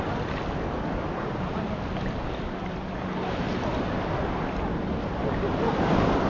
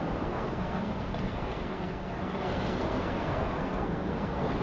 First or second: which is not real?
second